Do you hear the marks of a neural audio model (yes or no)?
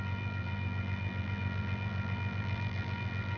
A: yes